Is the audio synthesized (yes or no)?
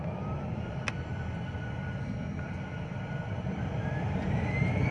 no